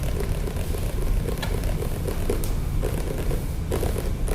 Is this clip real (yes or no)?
yes